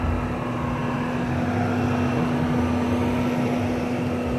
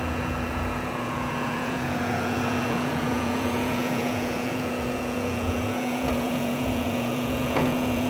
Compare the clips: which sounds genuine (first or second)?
first